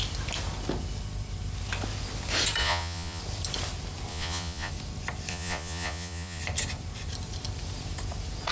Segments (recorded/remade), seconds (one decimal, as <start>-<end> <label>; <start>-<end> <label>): 0.0-2.6 recorded; 2.6-3.2 remade; 3.2-4.1 recorded; 4.1-4.7 remade; 4.7-5.3 recorded; 5.3-6.4 remade; 6.4-8.5 recorded